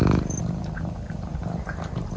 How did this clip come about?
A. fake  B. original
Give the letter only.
B